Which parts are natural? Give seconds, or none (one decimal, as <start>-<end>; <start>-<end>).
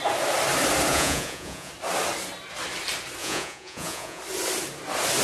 0.0-0.9; 1.7-3.2; 4.2-5.2